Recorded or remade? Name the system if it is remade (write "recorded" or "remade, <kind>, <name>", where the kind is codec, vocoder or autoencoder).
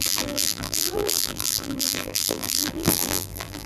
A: remade, vocoder, BigVGAN v2